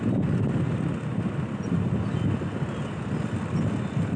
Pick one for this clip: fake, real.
real